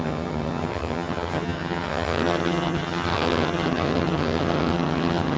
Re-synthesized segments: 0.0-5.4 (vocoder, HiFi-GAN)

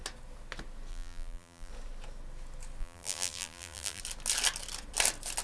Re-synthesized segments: 0.9-1.7 (vocoder, BigVGAN v2); 2.8-4.0

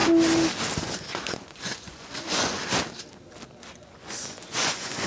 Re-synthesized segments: 0.8-2.6 (vocoder, Vocos); 3.7-5.1

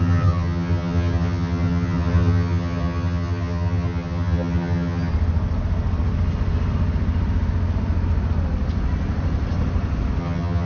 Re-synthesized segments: 0.0-5.1 (vocoder, HiFi-GAN); 10.2-10.7

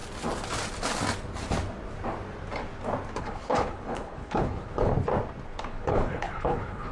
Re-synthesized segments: 3.2-4.9 (codec, HILCodec); 5.6-6.9